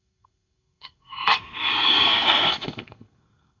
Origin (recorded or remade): remade